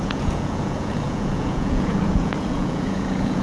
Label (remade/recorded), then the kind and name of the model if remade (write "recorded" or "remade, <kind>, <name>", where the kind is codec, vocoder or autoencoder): remade, vocoder, Vocos